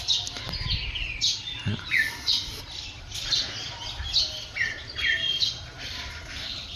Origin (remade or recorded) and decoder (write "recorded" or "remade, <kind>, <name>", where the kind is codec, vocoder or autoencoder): recorded